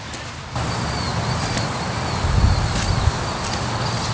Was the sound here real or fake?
real